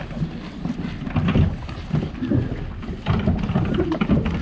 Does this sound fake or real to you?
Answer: real